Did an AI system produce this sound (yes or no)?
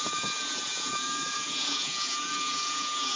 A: yes